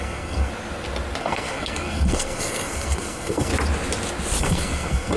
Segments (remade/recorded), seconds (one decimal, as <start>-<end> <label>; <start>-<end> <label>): 0.0-0.5 remade; 0.5-1.2 recorded; 1.2-3.5 remade; 3.5-4.4 recorded; 4.4-5.2 remade